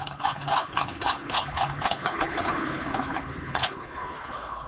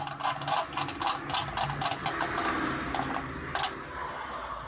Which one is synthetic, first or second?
first